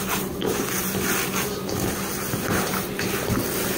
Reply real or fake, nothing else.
real